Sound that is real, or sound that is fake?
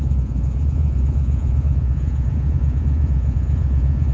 fake